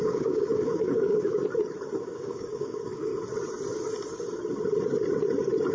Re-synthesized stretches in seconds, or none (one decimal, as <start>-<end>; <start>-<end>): 0.0-1.4; 2.0-3.1